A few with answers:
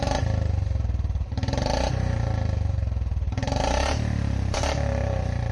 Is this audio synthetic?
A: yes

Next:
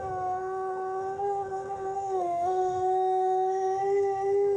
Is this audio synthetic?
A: yes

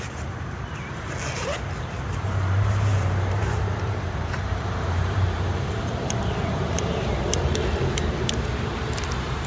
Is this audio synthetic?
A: yes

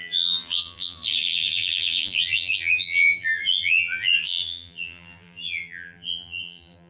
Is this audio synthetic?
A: yes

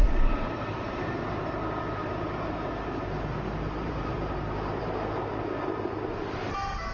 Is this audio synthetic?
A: yes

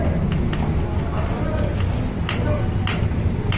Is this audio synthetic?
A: no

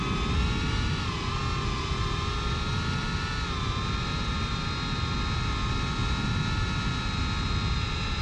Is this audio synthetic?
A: no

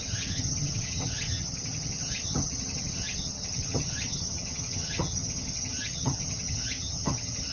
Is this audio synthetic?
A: yes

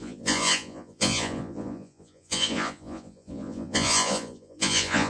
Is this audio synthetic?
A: yes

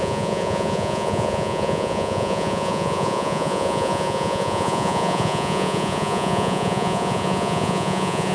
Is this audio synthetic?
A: yes